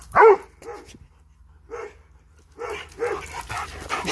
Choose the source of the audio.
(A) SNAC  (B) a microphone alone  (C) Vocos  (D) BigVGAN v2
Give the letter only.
B